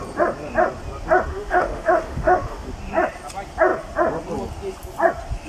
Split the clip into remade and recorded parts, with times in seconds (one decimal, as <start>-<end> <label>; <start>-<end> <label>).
0.0-1.3 recorded; 1.3-2.7 remade; 2.7-5.5 recorded